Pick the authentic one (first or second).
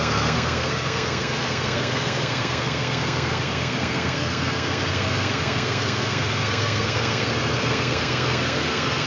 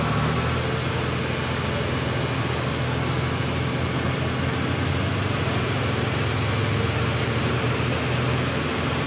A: second